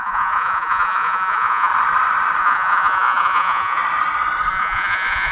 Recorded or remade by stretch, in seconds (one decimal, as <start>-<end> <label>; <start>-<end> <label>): 0.0-1.7 remade; 1.7-2.4 recorded; 2.4-3.8 remade; 3.8-4.5 recorded; 4.5-5.3 remade